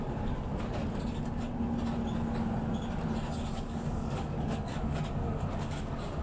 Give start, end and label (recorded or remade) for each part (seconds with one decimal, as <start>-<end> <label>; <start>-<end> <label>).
0.0-0.8 remade; 0.8-3.5 recorded; 3.5-6.2 remade